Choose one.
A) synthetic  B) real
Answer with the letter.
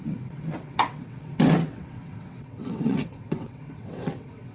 A